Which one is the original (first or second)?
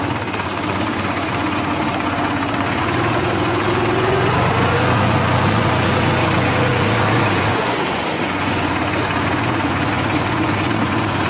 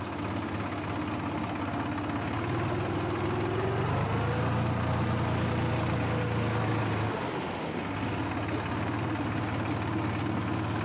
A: second